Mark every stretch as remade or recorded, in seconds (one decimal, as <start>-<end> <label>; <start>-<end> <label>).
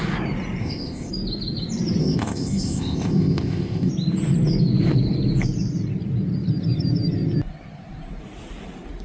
0.0-0.6 recorded; 0.6-1.1 remade; 1.1-2.0 recorded; 2.0-3.9 remade; 3.9-9.0 recorded